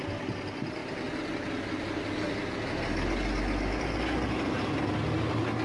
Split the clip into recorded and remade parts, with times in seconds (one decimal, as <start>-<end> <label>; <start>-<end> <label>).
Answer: 0.0-5.6 recorded